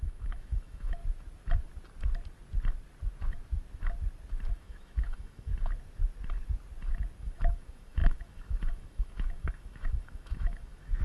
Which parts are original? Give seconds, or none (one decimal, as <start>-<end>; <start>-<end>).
1.0-4.5; 5.5-7.2